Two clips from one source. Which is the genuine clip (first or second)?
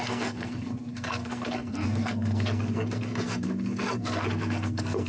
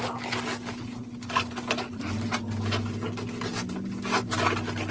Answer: second